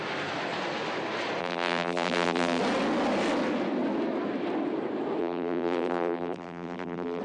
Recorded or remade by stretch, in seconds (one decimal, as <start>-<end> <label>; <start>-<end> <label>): 0.0-1.4 recorded; 1.4-2.6 remade; 2.6-5.2 recorded; 5.2-7.2 remade